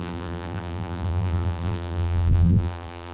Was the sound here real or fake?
fake